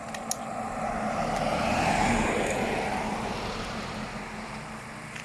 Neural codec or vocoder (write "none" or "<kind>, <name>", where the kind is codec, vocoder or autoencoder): none